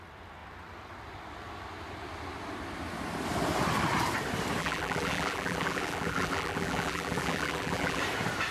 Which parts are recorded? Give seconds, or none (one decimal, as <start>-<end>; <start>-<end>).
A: 0.0-4.6; 8.0-8.5